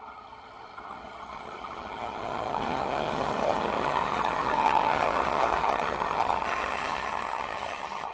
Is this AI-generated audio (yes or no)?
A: yes